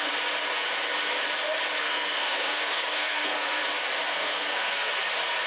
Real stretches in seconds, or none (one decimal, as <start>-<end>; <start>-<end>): 0.0-1.8; 3.6-4.1; 4.9-5.5